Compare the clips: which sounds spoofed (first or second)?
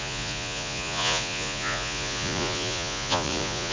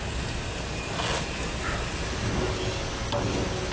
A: first